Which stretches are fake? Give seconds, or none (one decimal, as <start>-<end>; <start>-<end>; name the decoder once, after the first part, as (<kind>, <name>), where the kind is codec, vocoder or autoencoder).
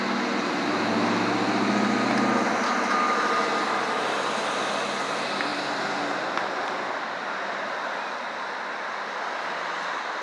none